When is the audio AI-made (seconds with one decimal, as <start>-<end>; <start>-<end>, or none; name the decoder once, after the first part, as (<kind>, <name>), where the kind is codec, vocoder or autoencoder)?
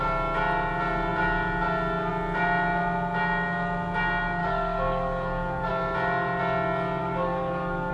4.4-5.7 (codec, DAC); 7.0-7.9